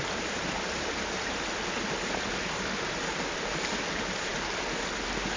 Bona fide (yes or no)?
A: yes